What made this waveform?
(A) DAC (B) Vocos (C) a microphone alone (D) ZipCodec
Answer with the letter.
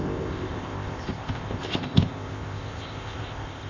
D